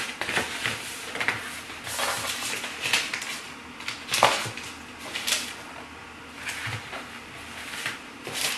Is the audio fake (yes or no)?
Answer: no